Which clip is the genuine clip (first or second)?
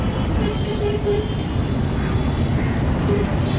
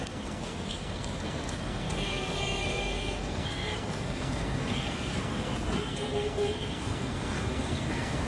first